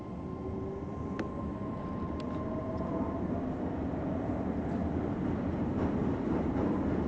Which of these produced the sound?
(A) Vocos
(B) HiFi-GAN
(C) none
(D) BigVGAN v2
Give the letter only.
C